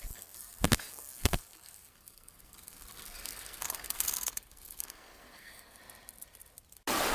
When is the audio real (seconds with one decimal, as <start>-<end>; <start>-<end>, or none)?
5.8-7.1